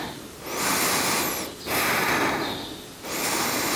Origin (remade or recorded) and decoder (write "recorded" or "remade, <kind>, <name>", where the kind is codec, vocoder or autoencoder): recorded